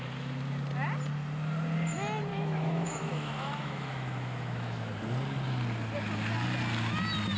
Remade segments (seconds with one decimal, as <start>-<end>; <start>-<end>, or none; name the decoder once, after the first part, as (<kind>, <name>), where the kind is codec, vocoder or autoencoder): 2.3-4.9 (autoencoder, DAC-VAE)